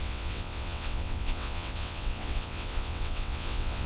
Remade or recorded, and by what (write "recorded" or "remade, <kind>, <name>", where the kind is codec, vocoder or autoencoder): remade, vocoder, WaveNeXt